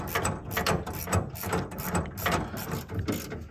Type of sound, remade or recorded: recorded